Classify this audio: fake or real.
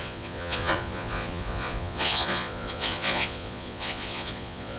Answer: fake